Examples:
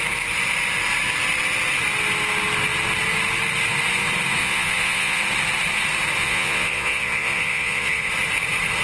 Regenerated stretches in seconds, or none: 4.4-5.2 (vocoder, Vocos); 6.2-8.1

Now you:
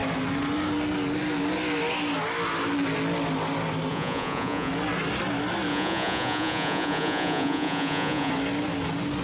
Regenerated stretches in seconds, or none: 3.9-4.7 (vocoder, Vocos); 5.7-8.3

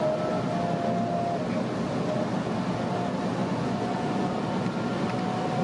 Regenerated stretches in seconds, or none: 3.4-4.4 (vocoder, Vocos)

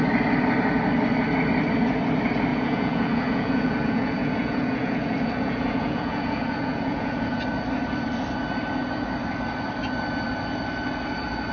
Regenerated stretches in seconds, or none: 2.5-7.4 (vocoder, Vocos)

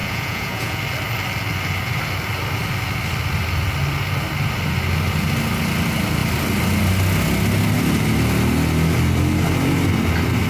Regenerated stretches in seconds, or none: 0.0-0.8 (vocoder, Vocos)

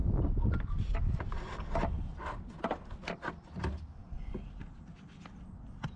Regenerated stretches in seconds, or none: none